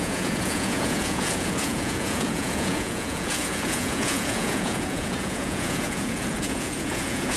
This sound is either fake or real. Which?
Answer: fake